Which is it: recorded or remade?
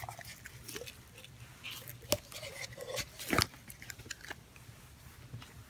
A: recorded